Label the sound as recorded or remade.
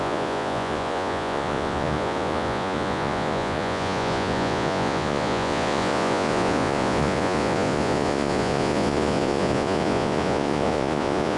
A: remade